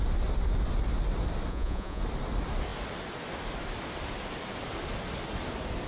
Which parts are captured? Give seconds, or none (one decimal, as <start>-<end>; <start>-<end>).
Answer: 0.0-1.5; 2.0-5.9